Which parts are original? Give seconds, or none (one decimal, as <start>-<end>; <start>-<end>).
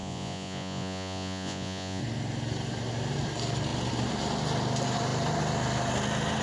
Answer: 2.0-6.4